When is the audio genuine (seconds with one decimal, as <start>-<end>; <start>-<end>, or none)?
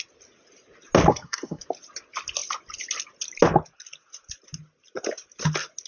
0.0-1.1; 1.6-5.9